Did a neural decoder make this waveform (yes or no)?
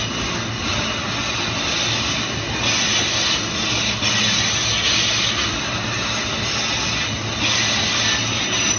no